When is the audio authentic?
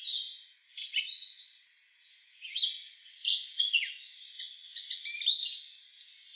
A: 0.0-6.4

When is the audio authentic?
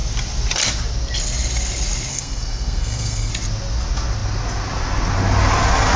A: 0.0-2.1; 3.3-6.0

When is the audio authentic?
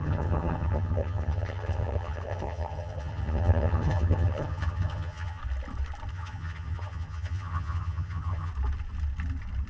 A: 5.4-6.1; 8.5-9.7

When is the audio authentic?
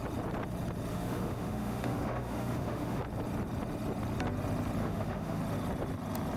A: 0.0-0.9; 3.0-4.8; 5.4-6.4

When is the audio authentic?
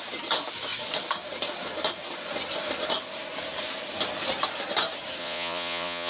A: 0.0-5.2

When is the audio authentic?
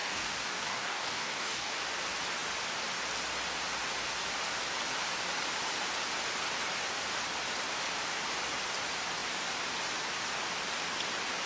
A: 1.8-11.5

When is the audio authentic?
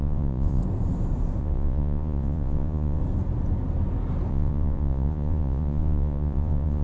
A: 0.6-1.4; 3.0-4.3